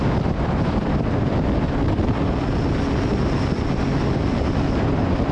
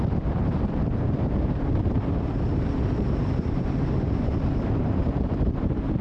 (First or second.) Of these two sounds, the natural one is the first